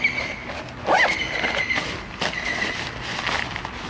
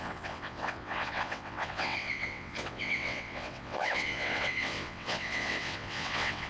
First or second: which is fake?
second